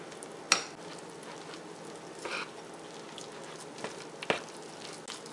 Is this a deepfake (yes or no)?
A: no